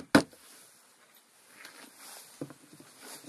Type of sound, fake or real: real